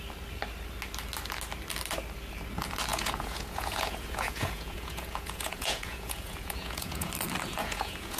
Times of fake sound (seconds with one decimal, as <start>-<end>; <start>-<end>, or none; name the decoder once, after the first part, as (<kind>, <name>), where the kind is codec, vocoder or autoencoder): 2.9-7.1 (vocoder, Vocos); 7.5-8.2